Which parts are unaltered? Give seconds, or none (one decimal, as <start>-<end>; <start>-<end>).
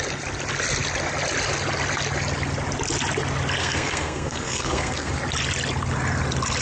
0.0-3.6; 5.1-6.6